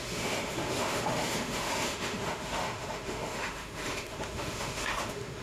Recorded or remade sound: remade